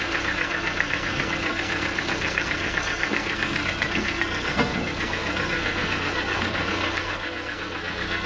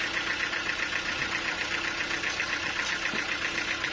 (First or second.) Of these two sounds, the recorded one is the second